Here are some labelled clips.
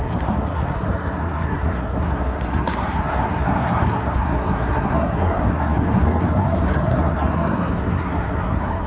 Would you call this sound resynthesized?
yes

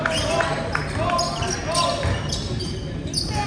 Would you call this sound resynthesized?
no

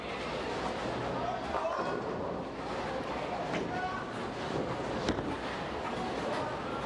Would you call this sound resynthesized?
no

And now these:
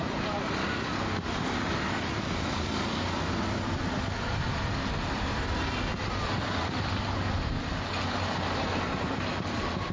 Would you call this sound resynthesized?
no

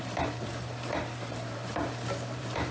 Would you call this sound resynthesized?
yes